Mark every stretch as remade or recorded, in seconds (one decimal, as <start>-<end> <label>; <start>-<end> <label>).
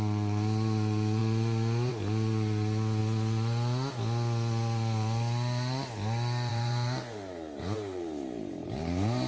0.0-6.5 recorded; 6.5-9.3 remade